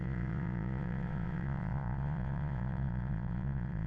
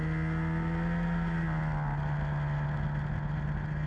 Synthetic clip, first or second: first